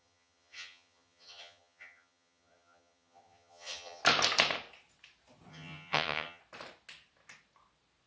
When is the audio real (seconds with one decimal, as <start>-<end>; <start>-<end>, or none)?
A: 4.0-5.5; 6.4-8.1